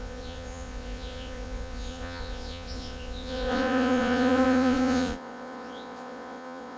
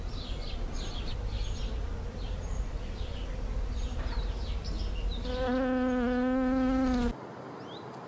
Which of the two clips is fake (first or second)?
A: first